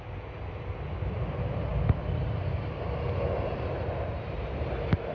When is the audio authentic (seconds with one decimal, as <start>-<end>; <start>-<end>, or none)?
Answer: 0.0-5.1